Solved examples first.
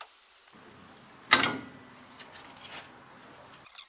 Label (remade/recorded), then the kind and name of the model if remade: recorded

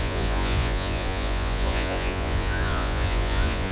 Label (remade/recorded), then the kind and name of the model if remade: remade, vocoder, Vocos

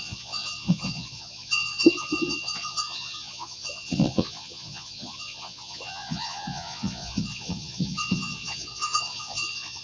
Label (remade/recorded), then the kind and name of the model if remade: remade, vocoder, Vocos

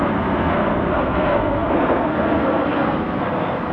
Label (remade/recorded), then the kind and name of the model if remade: remade, codec, SNAC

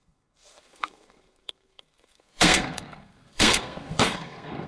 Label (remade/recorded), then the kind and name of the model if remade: remade, codec, SNAC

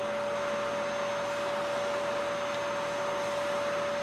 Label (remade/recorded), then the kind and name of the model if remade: recorded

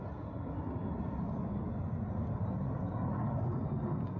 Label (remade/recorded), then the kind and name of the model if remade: recorded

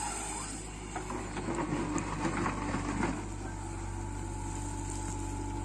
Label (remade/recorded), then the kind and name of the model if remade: recorded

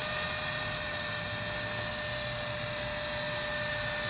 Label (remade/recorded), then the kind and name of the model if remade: recorded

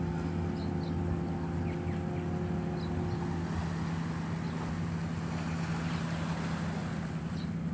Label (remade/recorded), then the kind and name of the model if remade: recorded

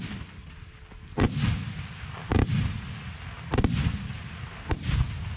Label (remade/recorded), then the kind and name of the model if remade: recorded